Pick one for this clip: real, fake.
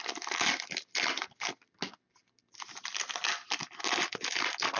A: real